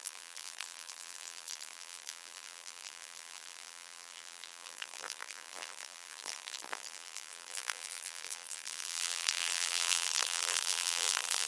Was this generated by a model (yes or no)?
yes